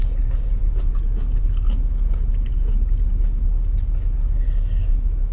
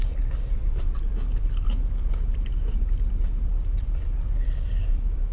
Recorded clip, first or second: first